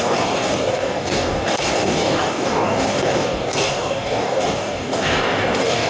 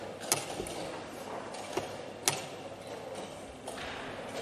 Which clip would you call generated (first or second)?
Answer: first